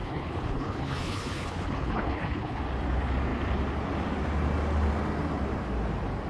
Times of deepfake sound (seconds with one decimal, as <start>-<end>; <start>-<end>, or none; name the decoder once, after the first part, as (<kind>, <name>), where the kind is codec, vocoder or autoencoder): 0.0-2.6 (codec, HILCodec)